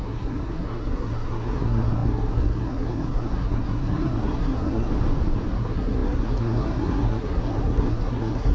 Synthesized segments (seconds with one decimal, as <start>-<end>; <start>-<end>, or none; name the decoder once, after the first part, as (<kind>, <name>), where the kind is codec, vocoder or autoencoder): 0.0-4.9 (codec, SNAC); 5.5-8.5